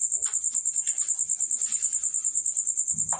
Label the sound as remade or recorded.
recorded